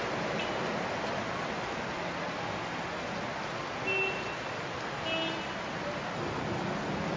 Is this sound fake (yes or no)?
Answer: no